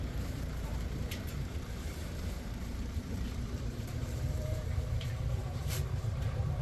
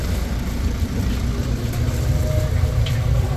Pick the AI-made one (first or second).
first